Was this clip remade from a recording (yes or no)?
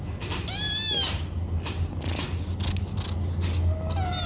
no